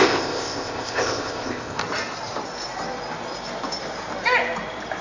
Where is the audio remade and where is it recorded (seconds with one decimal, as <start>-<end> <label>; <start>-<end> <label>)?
0.0-1.8 remade; 1.8-5.0 recorded